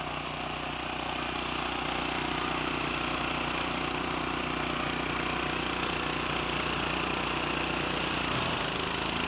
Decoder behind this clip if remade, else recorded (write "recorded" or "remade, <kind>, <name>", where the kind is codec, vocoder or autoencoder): remade, vocoder, BigVGAN v2